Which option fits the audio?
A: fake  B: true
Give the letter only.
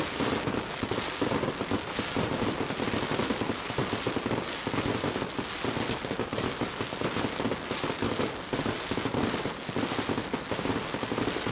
B